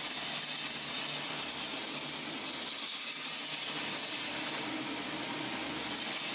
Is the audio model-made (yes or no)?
no